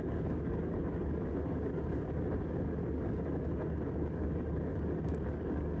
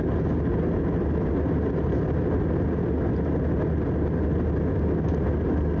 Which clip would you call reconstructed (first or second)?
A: first